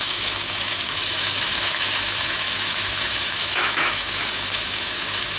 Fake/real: fake